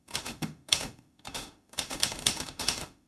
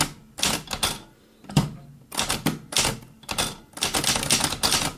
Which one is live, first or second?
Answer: second